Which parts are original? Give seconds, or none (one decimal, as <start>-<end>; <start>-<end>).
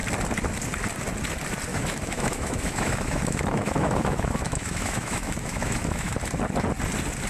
0.0-1.7; 6.1-7.3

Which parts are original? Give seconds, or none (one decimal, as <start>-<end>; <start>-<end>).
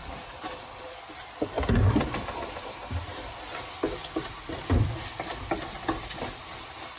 0.0-3.1; 6.4-7.0